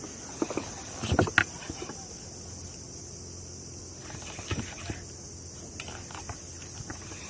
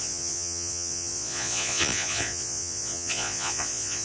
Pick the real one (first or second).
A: first